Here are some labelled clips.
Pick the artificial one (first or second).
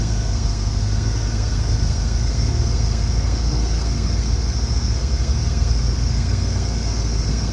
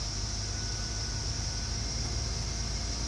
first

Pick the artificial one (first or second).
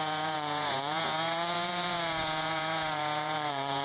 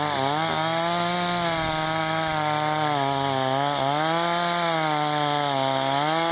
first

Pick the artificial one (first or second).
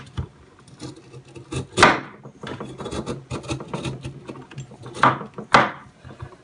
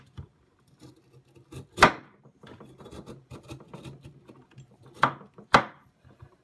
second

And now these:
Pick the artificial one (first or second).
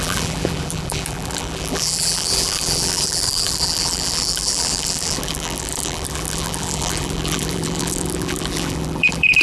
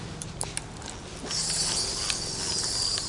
first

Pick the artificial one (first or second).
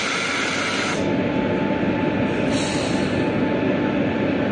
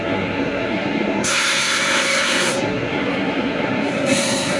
second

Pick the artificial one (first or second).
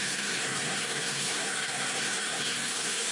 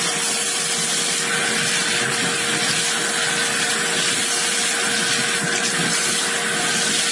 first